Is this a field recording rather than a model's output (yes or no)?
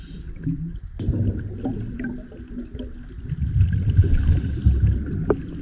yes